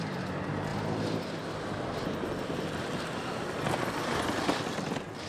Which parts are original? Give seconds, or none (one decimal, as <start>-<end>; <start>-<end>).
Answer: 0.0-5.3